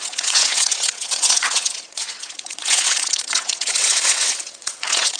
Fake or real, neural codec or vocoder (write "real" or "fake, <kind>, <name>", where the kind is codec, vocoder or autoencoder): fake, vocoder, WaveNeXt